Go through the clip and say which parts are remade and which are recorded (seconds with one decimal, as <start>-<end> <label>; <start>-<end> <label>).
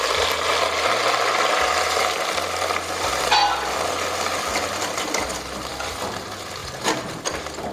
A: 0.0-6.6 recorded; 6.6-7.2 remade; 7.2-7.7 recorded